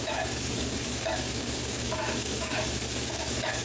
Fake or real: fake